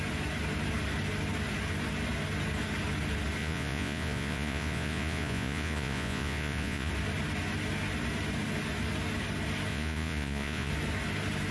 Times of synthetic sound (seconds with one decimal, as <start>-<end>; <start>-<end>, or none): 3.4-6.9; 9.7-10.7